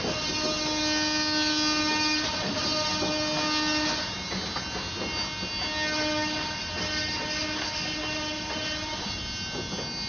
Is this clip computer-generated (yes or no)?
no